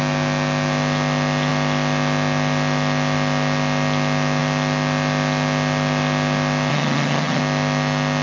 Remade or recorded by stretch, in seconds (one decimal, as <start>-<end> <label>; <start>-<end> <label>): 0.0-6.7 recorded; 6.7-7.4 remade; 7.4-8.2 recorded